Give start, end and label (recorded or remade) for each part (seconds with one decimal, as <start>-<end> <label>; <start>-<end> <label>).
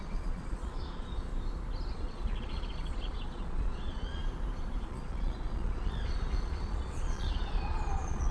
0.0-1.3 remade; 1.3-1.9 recorded; 1.9-4.2 remade; 4.2-4.8 recorded; 4.8-8.3 remade